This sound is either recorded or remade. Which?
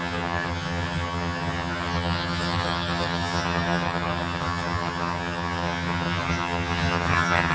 remade